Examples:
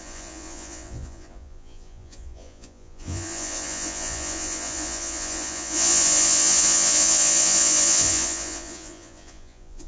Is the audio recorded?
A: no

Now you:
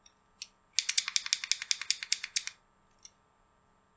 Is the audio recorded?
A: yes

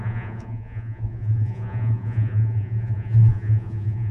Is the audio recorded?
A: no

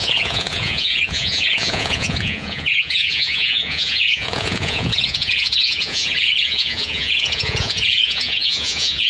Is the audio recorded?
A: no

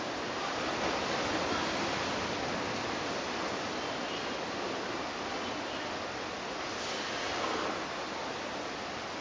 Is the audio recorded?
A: yes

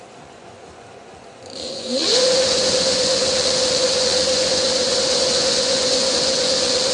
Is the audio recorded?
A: no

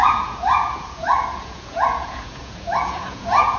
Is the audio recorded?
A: no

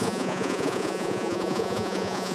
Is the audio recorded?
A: no